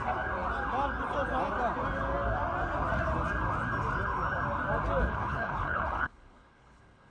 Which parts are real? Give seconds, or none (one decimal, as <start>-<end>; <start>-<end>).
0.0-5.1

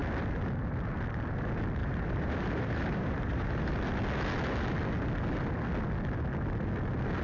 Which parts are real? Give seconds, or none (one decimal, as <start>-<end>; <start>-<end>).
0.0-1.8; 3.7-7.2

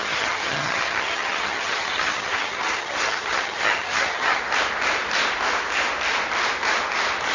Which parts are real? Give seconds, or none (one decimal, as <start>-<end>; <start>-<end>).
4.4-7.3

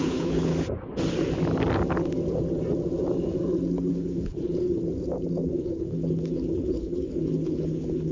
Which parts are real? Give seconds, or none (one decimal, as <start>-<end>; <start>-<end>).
0.5-3.9; 4.8-5.5

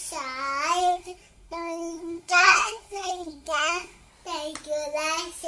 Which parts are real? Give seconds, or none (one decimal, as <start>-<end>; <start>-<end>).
0.0-0.8; 4.1-5.5

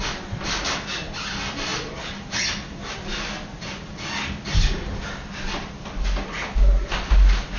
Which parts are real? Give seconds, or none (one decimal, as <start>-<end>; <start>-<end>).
0.0-7.6

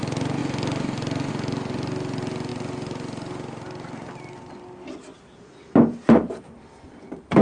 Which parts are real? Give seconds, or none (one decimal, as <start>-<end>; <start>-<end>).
0.0-7.4